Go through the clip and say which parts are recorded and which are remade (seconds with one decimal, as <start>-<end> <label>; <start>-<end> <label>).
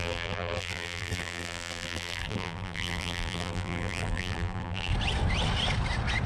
0.0-4.9 remade; 4.9-6.3 recorded